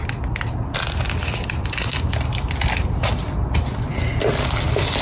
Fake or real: real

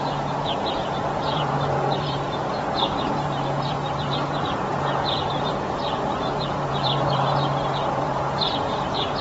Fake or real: fake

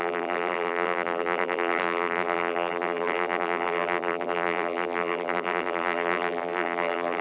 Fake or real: fake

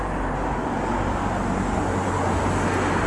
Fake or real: real